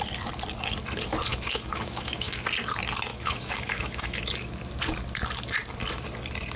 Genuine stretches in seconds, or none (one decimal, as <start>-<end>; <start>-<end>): 0.0-1.3; 2.4-3.1; 4.2-6.6